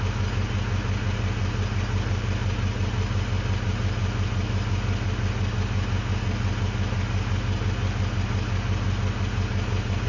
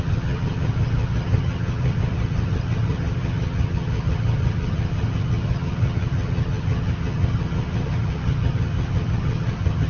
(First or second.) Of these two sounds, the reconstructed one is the second